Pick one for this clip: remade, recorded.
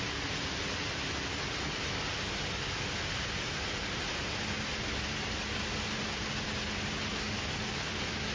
recorded